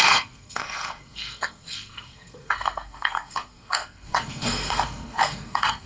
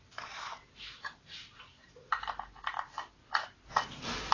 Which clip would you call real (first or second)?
second